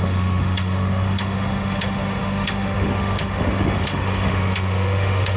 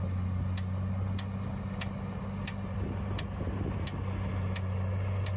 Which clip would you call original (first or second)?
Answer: second